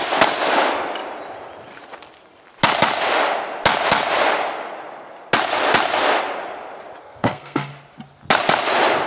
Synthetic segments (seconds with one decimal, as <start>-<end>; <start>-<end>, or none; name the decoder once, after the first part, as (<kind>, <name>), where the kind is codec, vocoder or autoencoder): 7.0-7.7 (codec, SNAC)